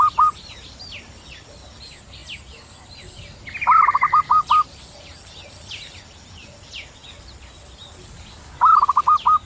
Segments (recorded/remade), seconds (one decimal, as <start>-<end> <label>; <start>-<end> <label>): 0.0-9.5 recorded